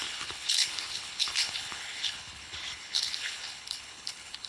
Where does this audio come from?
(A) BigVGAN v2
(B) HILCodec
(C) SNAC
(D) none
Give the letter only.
B